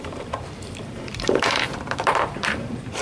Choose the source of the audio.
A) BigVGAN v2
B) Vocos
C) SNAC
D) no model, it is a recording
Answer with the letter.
A